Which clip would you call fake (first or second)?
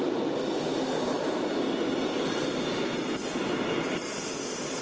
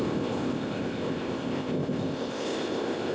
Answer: second